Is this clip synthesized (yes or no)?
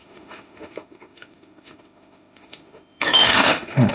yes